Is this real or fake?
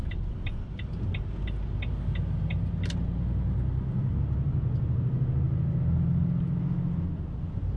real